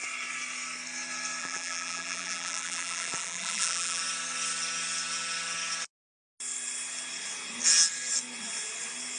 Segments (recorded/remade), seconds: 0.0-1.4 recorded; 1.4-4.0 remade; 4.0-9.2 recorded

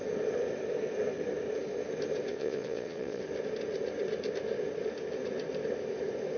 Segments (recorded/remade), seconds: 0.0-2.3 recorded; 2.3-3.2 remade; 3.2-6.4 recorded

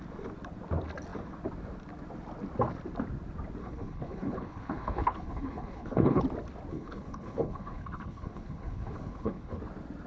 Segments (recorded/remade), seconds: 0.0-3.6 recorded; 3.6-6.2 remade; 6.2-6.7 recorded; 6.7-9.6 remade; 9.6-10.1 recorded

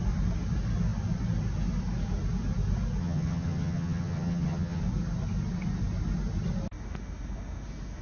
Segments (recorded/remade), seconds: 0.0-3.0 recorded; 3.0-4.8 remade; 4.8-8.0 recorded

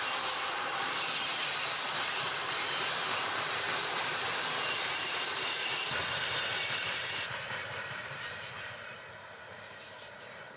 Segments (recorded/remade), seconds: 0.0-5.7 remade; 5.7-6.7 recorded; 6.7-10.6 remade